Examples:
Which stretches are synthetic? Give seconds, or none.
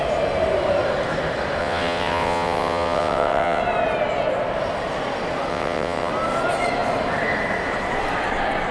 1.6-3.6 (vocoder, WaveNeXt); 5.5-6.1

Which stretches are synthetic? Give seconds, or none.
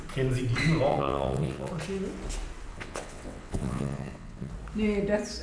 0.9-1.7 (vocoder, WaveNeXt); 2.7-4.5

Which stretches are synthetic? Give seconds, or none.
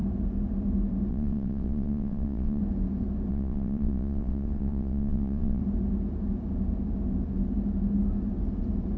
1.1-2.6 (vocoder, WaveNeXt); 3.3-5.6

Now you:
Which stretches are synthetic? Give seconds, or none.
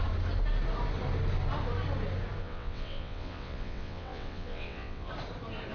2.4-5.1 (vocoder, WaveNeXt)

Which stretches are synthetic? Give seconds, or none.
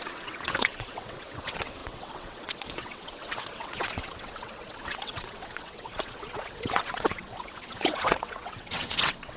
0.0-9.4 (vocoder, WaveNeXt)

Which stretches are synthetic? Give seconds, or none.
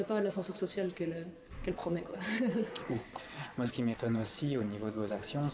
1.8-5.1 (vocoder, WaveNeXt)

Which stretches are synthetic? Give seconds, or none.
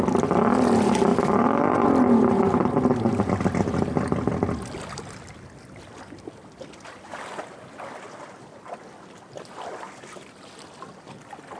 none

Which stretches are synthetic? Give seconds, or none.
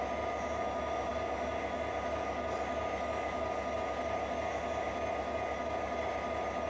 none